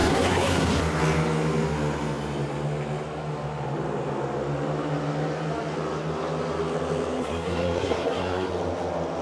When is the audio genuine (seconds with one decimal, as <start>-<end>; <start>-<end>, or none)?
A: 0.8-7.2; 8.5-9.2